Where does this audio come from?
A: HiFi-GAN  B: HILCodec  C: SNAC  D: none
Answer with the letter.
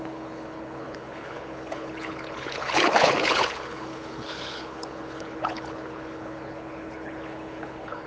B